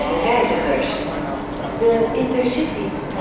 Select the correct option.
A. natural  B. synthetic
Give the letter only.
A